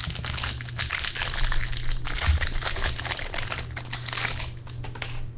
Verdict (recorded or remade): recorded